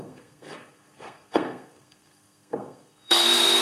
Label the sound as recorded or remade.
remade